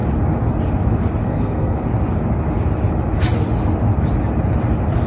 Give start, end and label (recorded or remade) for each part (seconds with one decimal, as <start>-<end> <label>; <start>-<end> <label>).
0.0-1.2 recorded; 1.2-1.8 remade; 1.8-5.1 recorded